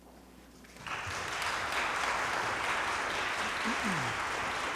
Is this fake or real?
real